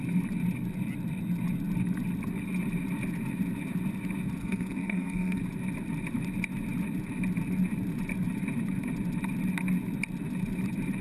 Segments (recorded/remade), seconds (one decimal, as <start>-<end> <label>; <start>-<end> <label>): 0.0-4.4 recorded; 4.4-5.4 remade; 5.4-11.0 recorded